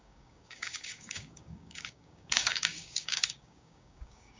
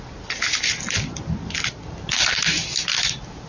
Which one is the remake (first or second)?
first